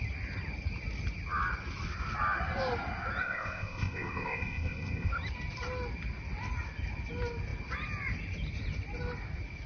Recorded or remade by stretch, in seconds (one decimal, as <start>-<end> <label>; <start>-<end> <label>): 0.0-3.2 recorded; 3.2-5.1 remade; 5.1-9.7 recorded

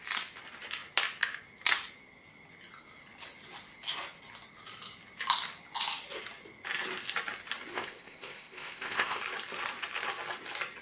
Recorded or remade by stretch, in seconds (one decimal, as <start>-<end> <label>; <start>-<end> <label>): 0.0-7.7 recorded; 7.7-9.2 remade; 9.2-10.8 recorded

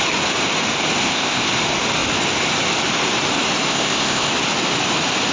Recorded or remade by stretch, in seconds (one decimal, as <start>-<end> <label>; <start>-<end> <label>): 0.0-1.0 recorded; 1.0-1.5 remade; 1.5-3.7 recorded; 3.7-4.3 remade; 4.3-5.3 recorded

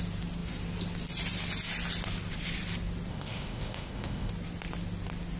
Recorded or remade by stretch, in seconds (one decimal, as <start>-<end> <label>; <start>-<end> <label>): 0.0-3.1 recorded; 3.1-4.3 remade; 4.3-5.4 recorded

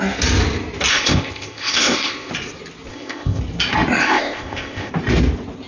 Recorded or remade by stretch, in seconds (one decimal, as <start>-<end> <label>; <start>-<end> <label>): 0.0-0.9 recorded; 0.9-2.3 remade; 2.3-2.9 recorded; 2.9-3.4 remade; 3.4-4.0 recorded; 4.0-4.9 remade; 4.9-5.7 recorded

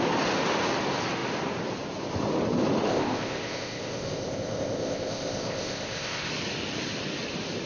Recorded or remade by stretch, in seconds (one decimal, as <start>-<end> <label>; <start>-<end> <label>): 0.0-2.9 recorded; 2.9-6.3 remade; 6.3-7.7 recorded

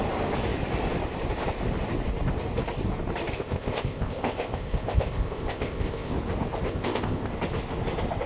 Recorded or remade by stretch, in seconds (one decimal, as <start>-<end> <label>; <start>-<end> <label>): 0.0-3.3 recorded; 3.3-6.1 remade; 6.1-6.7 recorded; 6.7-7.3 remade; 7.3-8.3 recorded